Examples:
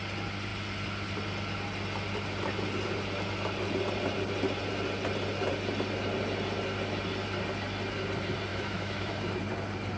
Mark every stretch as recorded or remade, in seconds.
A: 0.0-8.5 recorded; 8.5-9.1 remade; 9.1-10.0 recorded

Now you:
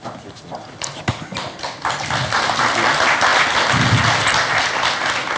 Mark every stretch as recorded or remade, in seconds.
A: 0.0-5.4 recorded

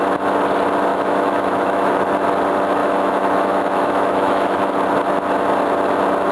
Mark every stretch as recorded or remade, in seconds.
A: 0.0-0.9 recorded; 0.9-2.0 remade; 2.0-2.8 recorded; 2.8-4.7 remade; 4.7-6.3 recorded